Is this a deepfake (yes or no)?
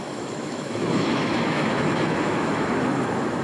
yes